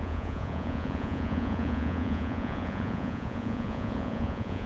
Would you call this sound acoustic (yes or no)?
no